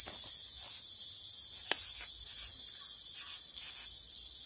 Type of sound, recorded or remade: recorded